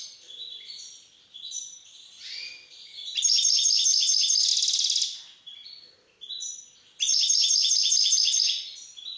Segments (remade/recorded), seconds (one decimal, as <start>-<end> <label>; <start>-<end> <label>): 0.0-9.2 recorded